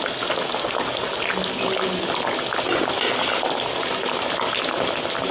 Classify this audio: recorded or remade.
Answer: recorded